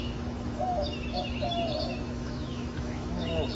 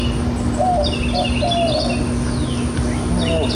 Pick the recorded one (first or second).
second